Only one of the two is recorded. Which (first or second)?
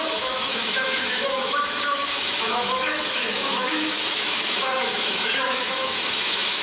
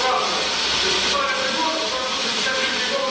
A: second